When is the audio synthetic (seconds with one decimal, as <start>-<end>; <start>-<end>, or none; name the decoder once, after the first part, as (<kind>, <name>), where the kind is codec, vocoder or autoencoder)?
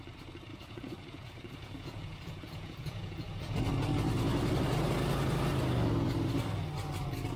0.5-3.6 (vocoder, Vocos)